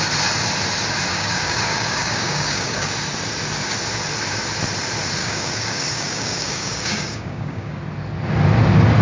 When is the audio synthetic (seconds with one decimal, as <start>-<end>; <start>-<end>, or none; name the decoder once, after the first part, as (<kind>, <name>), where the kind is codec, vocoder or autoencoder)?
1.1-2.9 (codec, DAC); 5.2-7.8